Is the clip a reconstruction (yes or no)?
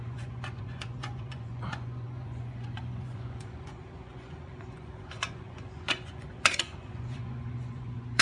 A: yes